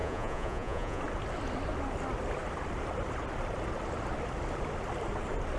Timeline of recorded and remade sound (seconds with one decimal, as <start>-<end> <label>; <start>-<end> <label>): 0.0-1.0 remade; 1.0-5.6 recorded